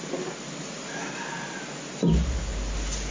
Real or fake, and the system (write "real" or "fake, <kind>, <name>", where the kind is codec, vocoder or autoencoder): real